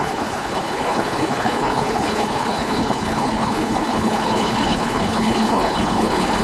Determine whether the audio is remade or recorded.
remade